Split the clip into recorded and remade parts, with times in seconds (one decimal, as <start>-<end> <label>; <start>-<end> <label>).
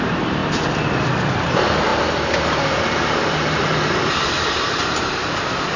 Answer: 0.0-0.4 remade; 0.4-1.3 recorded; 1.3-5.8 remade